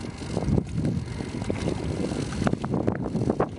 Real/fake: real